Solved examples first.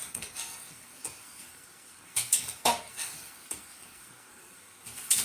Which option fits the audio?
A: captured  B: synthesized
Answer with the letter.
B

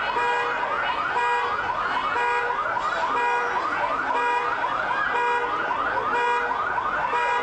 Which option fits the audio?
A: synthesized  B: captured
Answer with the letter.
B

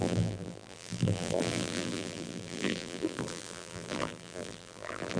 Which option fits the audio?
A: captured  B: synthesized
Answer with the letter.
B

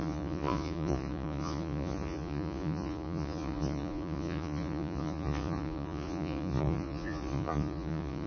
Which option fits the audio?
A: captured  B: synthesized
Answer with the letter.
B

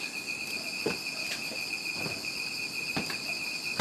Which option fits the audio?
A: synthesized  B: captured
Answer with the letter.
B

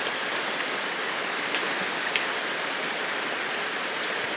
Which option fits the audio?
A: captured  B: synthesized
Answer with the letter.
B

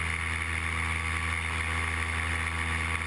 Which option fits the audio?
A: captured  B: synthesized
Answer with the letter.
A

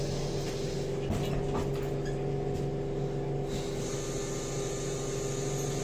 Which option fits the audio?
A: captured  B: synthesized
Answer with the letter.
A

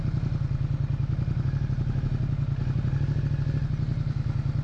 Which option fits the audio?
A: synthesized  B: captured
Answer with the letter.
B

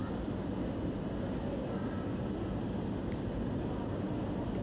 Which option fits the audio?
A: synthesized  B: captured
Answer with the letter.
B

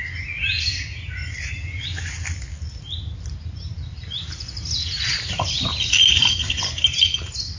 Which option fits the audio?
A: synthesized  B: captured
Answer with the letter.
B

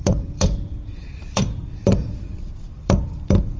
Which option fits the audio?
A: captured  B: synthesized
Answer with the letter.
B